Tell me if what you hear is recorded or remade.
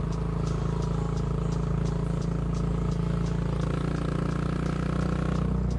recorded